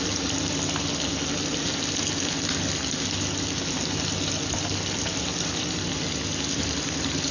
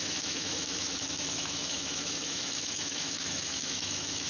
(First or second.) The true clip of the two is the first